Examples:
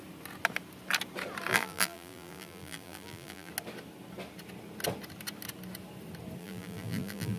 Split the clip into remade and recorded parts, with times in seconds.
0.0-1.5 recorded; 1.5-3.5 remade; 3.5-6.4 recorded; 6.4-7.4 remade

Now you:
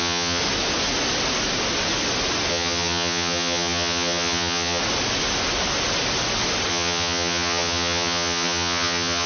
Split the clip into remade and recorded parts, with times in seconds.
0.0-0.4 remade; 0.4-2.5 recorded; 2.5-4.8 remade; 4.8-6.7 recorded; 6.7-9.3 remade

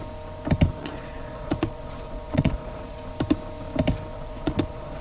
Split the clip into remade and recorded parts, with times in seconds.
0.0-0.8 recorded; 0.8-3.0 remade; 3.0-4.1 recorded; 4.1-5.0 remade

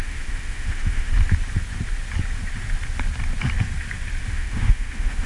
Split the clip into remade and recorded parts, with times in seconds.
0.0-1.1 remade; 1.1-4.3 recorded; 4.3-5.3 remade

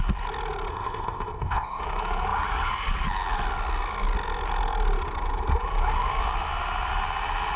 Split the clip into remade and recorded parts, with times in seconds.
0.0-0.7 recorded; 0.7-1.8 remade; 1.8-7.6 recorded

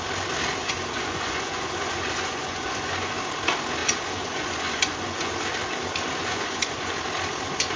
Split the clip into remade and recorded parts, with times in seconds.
0.0-0.6 recorded; 0.6-3.2 remade; 3.2-3.8 recorded; 3.8-5.3 remade; 5.3-6.2 recorded; 6.2-6.9 remade; 6.9-7.8 recorded